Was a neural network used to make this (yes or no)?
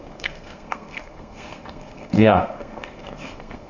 yes